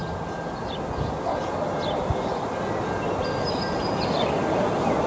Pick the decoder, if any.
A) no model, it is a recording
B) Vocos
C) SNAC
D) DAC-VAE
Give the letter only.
A